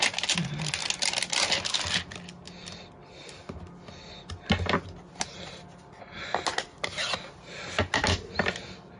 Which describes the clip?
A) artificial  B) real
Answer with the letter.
B